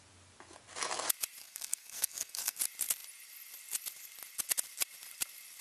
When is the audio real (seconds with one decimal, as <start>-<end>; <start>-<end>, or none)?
0.0-1.4; 2.6-5.6